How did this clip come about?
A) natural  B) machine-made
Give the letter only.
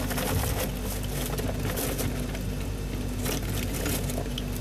A